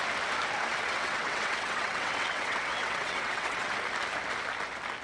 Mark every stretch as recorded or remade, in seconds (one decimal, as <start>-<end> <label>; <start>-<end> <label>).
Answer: 0.0-0.7 recorded; 0.7-3.7 remade; 3.7-5.0 recorded